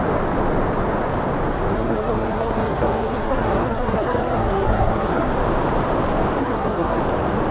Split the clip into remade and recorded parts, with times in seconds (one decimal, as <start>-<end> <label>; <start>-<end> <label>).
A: 0.0-1.7 recorded; 1.7-5.3 remade; 5.3-6.4 recorded; 6.4-7.0 remade; 7.0-7.5 recorded